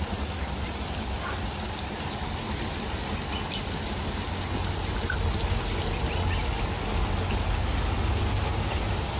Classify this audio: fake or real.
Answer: real